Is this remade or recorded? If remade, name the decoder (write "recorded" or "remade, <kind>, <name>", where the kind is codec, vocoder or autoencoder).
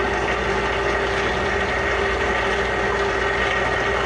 recorded